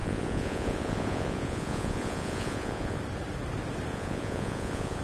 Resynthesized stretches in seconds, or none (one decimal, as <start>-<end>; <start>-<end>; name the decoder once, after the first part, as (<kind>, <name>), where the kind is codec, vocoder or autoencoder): 0.0-3.0 (vocoder, Vocos); 3.9-5.0